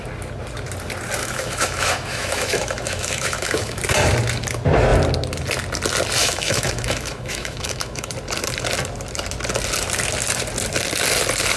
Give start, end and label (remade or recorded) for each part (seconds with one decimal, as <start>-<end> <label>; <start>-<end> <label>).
0.0-1.2 recorded; 1.2-3.8 remade; 3.8-6.2 recorded; 6.2-8.1 remade; 8.1-11.6 recorded